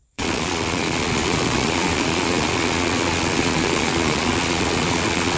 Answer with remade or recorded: remade